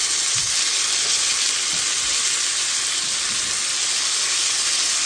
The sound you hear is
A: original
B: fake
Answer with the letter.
A